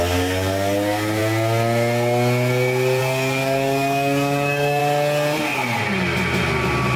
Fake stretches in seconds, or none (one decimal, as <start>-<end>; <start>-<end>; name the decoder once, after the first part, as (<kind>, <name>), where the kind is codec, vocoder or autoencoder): 0.0-1.2 (codec, DAC); 3.0-4.8